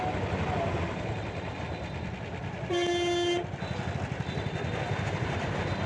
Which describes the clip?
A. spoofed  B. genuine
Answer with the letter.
B